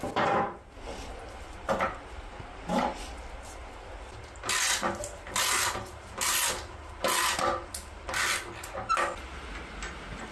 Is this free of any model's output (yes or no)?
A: yes